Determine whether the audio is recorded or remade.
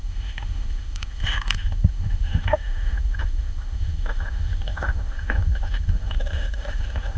remade